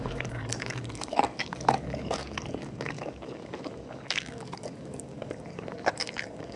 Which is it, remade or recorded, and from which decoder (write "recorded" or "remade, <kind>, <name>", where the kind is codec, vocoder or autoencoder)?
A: remade, codec, DAC